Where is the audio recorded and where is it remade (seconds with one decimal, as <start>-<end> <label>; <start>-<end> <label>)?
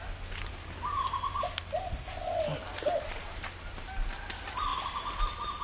0.0-2.6 recorded; 2.6-3.5 remade; 3.5-5.6 recorded